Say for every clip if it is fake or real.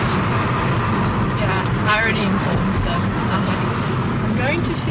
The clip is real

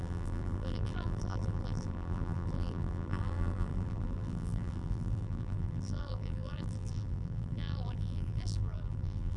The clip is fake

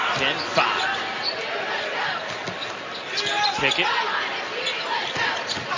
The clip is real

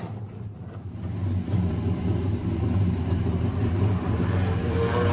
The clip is fake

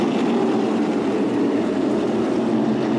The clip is real